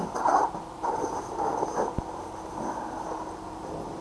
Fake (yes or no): no